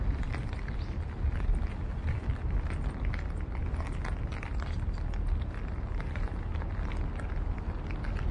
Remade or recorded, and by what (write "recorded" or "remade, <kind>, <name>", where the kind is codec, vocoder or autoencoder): recorded